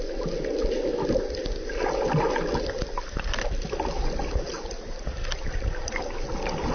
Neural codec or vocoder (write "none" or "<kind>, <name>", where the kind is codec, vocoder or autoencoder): none